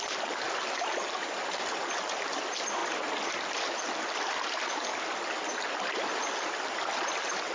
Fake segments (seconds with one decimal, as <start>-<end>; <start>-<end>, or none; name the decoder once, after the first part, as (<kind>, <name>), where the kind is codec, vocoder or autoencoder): none